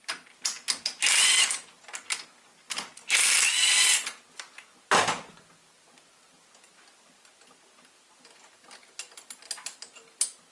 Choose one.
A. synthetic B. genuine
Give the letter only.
B